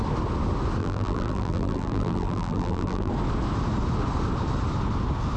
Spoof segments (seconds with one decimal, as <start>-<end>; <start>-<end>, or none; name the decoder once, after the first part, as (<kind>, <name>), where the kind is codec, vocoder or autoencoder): 0.8-3.1 (vocoder, BigVGAN v2)